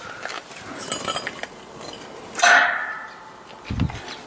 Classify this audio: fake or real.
real